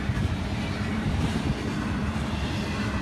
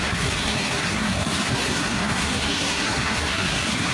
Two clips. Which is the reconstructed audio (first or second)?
second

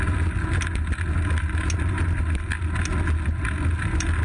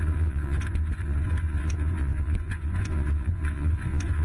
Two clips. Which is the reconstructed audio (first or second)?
second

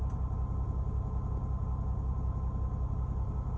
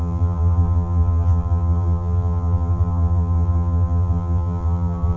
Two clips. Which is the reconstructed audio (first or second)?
second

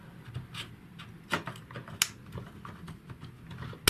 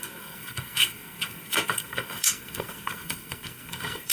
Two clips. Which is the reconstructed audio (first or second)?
second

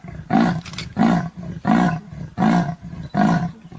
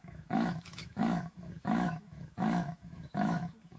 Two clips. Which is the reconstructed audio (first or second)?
second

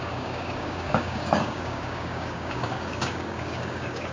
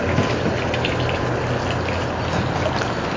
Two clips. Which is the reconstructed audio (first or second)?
first